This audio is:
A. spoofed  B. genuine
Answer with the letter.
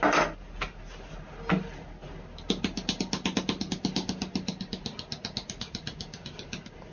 B